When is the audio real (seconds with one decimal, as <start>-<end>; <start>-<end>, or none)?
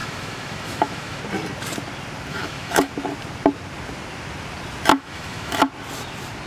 1.2-2.3; 2.9-4.9; 5.7-6.5